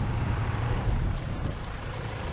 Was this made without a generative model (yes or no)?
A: no